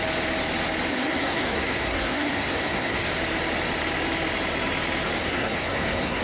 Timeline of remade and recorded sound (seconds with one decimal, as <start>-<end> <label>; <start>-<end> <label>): 0.0-0.9 recorded; 0.9-3.1 remade; 3.1-5.2 recorded; 5.2-6.2 remade